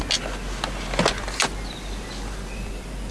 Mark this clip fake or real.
real